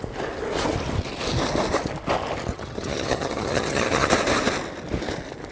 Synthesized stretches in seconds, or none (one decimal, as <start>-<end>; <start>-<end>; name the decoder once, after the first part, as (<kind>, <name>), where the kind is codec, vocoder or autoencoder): 2.5-4.1 (vocoder, HiFi-GAN)